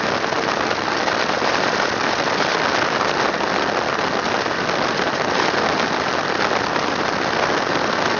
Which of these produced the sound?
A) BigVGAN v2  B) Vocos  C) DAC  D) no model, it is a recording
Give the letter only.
D